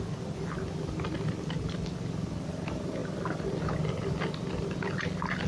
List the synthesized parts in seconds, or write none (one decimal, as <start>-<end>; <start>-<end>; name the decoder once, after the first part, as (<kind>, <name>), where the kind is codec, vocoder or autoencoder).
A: none